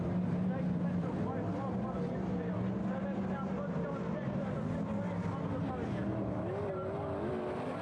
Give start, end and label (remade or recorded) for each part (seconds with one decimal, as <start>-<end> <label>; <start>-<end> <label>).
0.0-7.8 recorded